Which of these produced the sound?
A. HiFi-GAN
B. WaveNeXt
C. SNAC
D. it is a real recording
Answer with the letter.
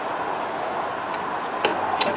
D